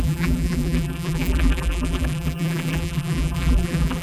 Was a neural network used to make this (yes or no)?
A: yes